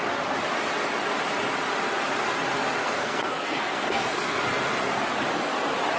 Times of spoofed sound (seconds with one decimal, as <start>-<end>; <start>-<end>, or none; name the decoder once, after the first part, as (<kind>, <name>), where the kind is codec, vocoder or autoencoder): 2.8-4.4 (codec, SNAC)